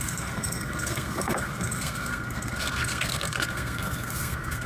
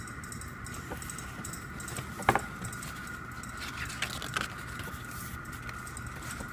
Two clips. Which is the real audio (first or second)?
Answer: second